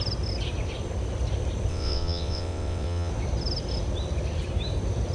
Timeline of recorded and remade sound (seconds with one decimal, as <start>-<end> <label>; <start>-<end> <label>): 0.0-1.7 recorded; 1.7-3.1 remade; 3.1-5.1 recorded